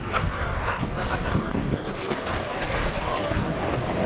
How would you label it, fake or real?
fake